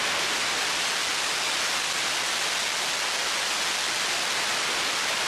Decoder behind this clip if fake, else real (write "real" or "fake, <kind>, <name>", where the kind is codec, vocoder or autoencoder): real